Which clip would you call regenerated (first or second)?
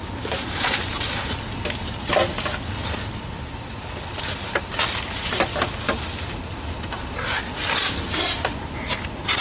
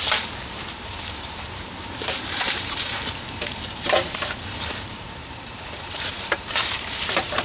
second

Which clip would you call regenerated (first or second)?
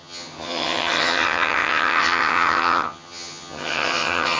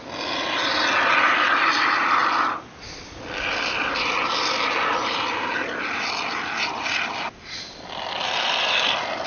first